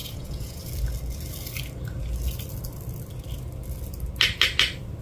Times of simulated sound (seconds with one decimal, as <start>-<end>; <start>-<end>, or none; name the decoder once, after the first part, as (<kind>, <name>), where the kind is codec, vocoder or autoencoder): 0.0-0.7 (vocoder, Vocos)

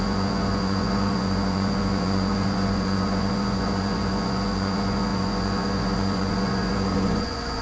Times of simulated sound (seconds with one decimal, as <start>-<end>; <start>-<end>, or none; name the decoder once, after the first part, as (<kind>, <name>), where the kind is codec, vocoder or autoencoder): 0.0-7.6 (vocoder, Vocos)

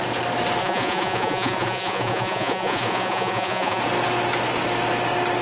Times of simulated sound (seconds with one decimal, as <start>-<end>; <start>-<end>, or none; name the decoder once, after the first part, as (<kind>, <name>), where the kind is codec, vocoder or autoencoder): 0.6-3.8 (vocoder, Vocos)

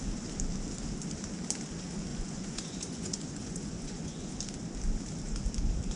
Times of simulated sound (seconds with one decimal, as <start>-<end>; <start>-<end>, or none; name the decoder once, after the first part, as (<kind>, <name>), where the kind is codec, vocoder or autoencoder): 2.1-4.3 (vocoder, Vocos)

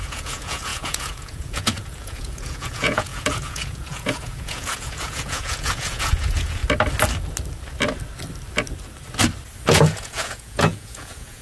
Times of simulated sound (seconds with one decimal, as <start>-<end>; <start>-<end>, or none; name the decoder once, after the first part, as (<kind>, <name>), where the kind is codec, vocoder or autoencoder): 0.0-6.6 (vocoder, Vocos); 9.7-11.4

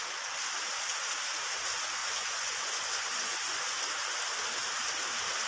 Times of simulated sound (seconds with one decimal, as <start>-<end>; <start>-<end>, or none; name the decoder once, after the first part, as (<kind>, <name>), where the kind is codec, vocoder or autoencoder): 2.0-3.6 (vocoder, Vocos)